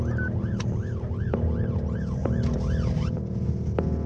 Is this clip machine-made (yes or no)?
no